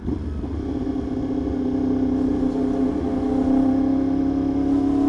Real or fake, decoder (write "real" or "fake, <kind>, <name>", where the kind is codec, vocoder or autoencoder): real